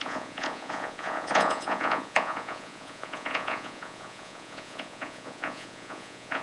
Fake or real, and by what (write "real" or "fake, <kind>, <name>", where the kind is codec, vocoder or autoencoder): fake, vocoder, Vocos